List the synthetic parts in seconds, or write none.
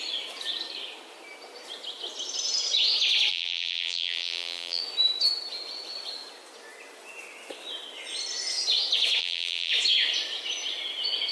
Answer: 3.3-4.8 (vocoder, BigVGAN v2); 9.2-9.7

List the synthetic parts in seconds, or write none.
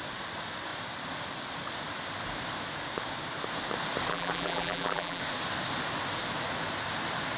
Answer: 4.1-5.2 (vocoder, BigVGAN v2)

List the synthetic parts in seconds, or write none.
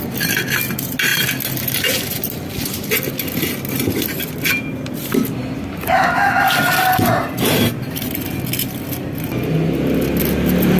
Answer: none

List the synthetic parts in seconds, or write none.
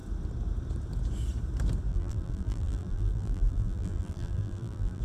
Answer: 1.9-5.0 (vocoder, BigVGAN v2)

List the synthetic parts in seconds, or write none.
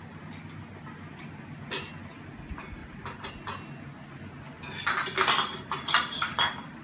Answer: 2.8-3.3 (vocoder, BigVGAN v2)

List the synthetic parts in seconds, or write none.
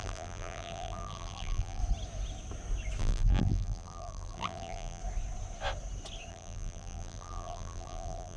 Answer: 0.0-1.8 (vocoder, BigVGAN v2); 3.0-5.0; 6.3-8.4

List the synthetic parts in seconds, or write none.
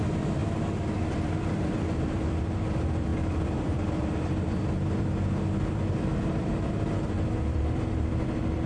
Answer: 0.0-8.7 (vocoder, BigVGAN v2)